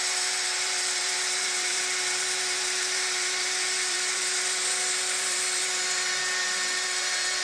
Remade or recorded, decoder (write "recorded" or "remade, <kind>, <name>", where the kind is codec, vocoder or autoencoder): remade, vocoder, BigVGAN v2